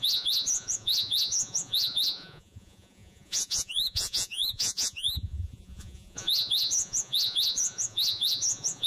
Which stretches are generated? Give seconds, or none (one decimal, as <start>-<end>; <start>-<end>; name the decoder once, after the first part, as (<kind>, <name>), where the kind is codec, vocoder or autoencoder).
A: 0.0-8.9 (vocoder, Vocos)